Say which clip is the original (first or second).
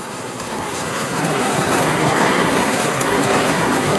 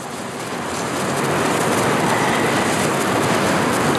second